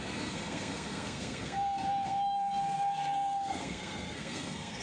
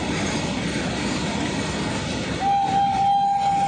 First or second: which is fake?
first